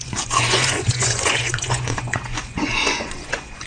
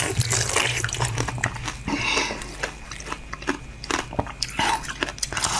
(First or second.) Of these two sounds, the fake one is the first